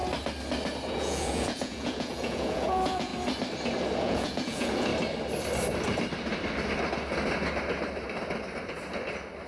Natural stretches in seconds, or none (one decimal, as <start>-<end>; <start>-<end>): 0.0-0.9; 3.1-4.0; 4.9-9.5